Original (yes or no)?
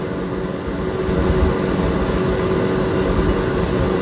yes